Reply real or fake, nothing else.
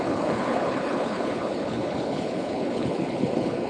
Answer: fake